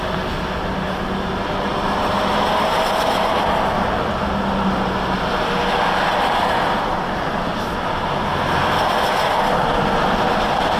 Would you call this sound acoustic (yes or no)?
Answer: yes